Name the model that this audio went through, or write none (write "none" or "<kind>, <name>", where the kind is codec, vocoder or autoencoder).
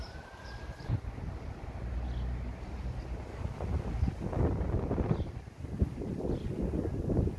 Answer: none